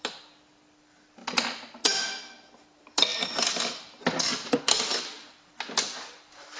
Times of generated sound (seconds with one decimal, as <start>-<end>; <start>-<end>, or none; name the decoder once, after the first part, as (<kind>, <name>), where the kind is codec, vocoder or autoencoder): none